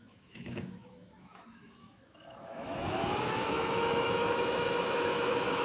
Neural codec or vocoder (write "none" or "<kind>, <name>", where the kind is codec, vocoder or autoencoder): autoencoder, DAC-VAE